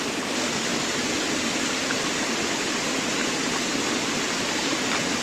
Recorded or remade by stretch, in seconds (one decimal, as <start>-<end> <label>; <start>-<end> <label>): 0.0-0.7 remade; 0.7-2.4 recorded; 2.4-3.1 remade; 3.1-4.6 recorded; 4.6-5.2 remade